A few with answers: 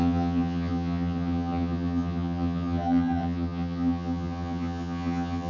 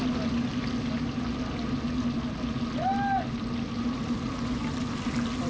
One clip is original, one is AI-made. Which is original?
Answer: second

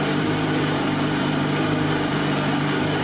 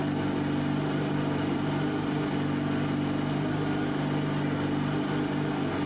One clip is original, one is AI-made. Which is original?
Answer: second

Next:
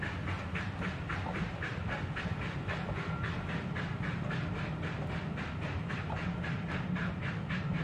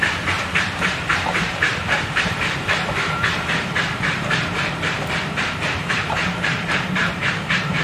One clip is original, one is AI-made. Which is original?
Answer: first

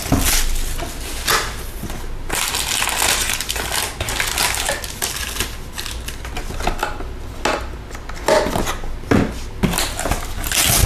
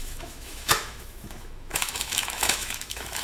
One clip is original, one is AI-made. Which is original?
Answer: first